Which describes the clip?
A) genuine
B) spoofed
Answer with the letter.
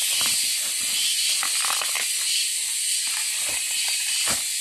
A